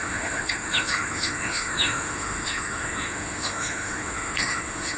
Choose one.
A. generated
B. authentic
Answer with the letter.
A